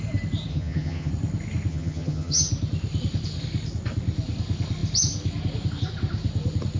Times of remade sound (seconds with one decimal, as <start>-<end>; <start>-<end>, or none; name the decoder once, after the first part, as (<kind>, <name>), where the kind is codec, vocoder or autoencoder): 0.5-1.1 (vocoder, HiFi-GAN); 1.7-2.5